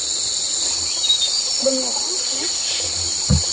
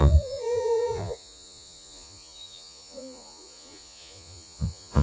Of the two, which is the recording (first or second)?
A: first